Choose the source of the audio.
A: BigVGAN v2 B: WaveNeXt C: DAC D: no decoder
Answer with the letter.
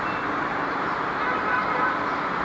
A